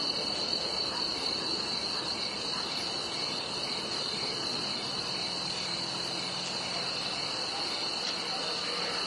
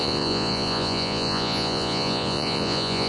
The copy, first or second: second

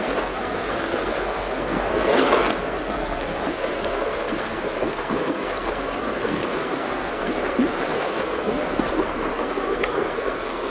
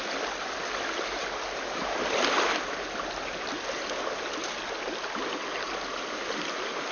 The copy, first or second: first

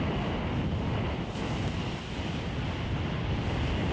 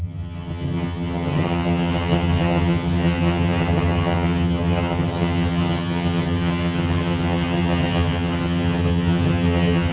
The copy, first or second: second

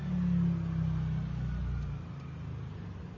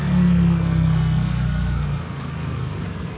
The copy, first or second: second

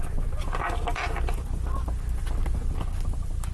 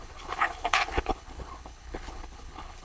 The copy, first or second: second